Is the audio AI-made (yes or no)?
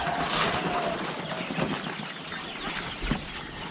no